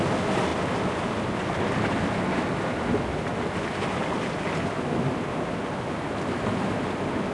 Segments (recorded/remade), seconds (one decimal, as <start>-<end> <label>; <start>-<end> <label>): 0.0-7.3 recorded